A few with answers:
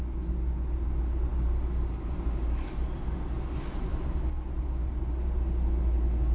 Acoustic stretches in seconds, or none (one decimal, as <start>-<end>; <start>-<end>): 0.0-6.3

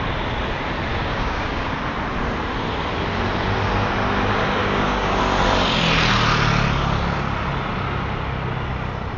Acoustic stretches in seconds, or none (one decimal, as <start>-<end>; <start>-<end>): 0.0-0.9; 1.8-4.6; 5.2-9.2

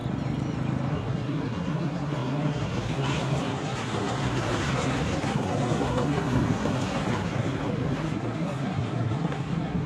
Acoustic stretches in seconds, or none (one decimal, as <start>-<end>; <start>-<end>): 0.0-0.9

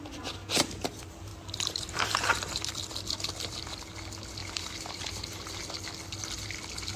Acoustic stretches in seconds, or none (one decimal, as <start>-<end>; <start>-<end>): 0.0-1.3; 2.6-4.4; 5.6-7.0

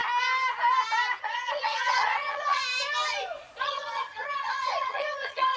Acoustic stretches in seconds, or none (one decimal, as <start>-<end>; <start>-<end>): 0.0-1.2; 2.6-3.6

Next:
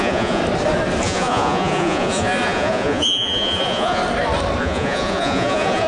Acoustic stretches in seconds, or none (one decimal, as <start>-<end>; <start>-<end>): 0.4-1.0; 4.0-4.6

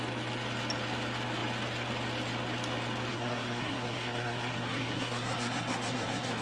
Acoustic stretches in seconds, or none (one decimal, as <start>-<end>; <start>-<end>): 0.0-3.1

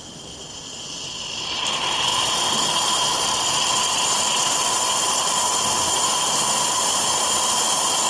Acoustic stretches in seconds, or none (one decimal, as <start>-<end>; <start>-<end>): 0.0-2.1; 5.7-8.1